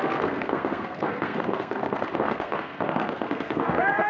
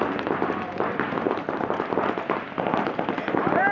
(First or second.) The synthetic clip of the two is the first